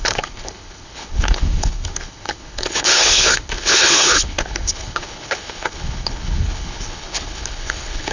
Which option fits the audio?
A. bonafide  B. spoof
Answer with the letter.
B